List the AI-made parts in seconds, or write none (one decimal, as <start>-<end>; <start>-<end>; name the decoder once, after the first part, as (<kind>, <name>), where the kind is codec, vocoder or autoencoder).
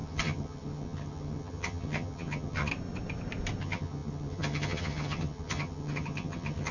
0.0-2.7 (vocoder, HiFi-GAN); 3.6-6.7